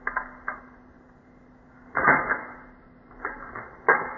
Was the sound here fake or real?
real